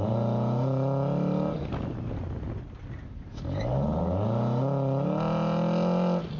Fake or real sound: real